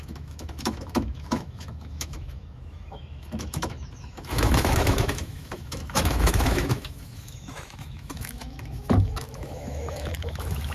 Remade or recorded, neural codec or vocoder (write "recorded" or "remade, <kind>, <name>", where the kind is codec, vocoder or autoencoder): remade, autoencoder, DAC-VAE